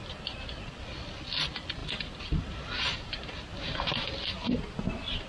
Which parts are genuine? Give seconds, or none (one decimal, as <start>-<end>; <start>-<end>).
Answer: 0.0-5.3